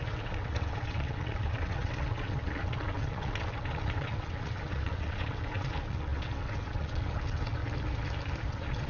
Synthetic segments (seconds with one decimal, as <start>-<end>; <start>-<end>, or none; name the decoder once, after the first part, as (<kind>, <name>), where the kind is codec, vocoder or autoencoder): 0.0-7.6 (vocoder, WaveNeXt); 8.5-8.9